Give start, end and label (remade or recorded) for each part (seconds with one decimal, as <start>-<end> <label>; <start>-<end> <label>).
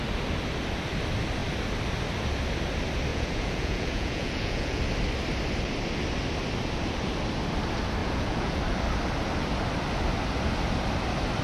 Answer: 0.0-3.1 recorded; 3.1-4.8 remade; 4.8-8.0 recorded; 8.0-8.6 remade; 8.6-11.4 recorded